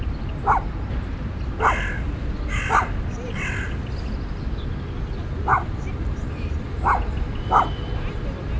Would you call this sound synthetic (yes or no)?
no